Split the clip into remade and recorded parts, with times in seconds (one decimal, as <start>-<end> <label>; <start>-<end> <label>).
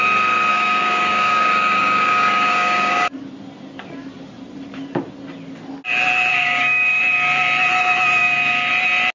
0.0-0.5 recorded; 0.5-3.1 remade; 3.1-6.3 recorded; 6.3-7.0 remade; 7.0-8.2 recorded; 8.2-8.7 remade; 8.7-9.1 recorded